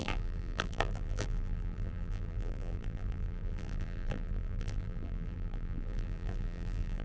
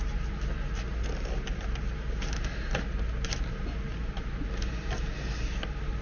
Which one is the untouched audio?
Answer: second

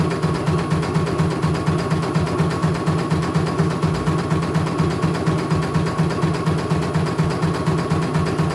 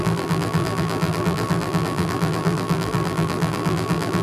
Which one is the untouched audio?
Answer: first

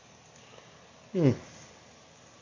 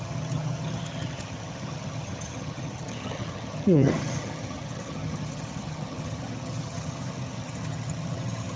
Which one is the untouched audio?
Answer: first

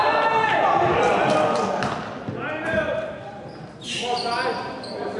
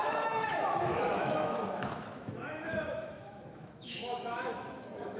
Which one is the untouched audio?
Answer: first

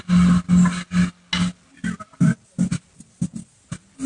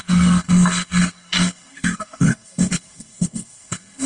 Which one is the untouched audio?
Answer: first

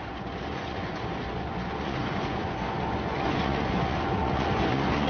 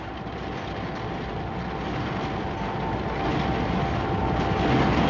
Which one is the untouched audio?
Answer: second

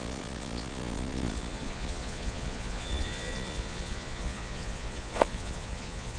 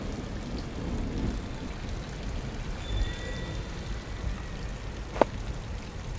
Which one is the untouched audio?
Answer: second